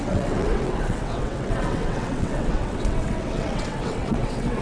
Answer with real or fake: fake